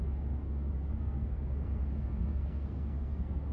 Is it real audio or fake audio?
fake